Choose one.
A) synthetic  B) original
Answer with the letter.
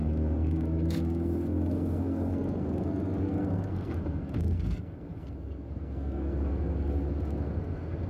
A